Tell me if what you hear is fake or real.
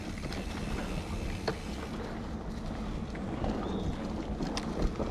real